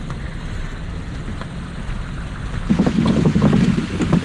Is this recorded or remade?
recorded